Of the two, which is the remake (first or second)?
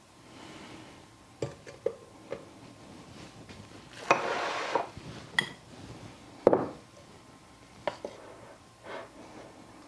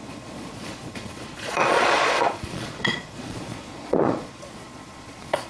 second